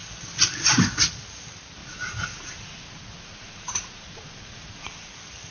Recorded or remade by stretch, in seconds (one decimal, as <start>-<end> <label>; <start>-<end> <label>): 0.0-1.8 recorded; 1.8-5.1 remade; 5.1-5.5 recorded